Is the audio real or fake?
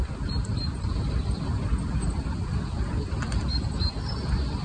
fake